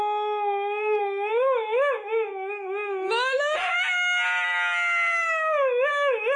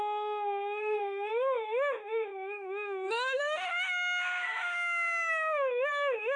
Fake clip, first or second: second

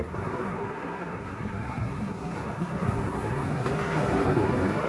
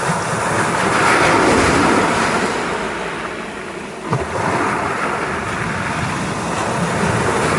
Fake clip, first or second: first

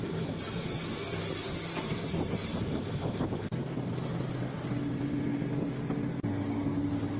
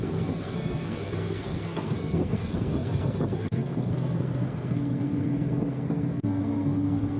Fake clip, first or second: second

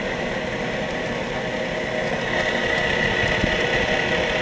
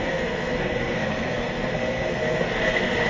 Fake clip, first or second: second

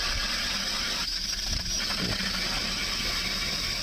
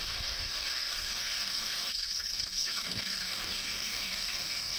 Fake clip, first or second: second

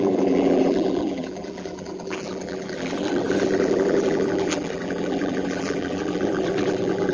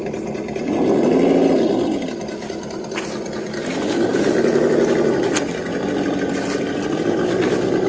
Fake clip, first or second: first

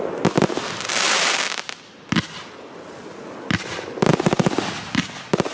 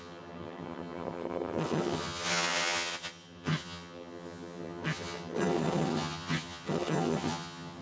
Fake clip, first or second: second